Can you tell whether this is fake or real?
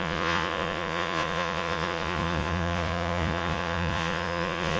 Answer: fake